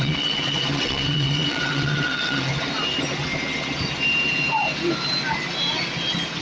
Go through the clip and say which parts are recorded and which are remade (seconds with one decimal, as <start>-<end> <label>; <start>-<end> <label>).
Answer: 0.0-2.5 remade; 2.5-6.4 recorded